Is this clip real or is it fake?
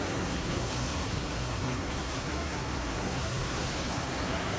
fake